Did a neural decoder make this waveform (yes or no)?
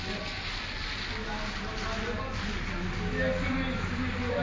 no